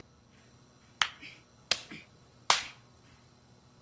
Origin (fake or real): real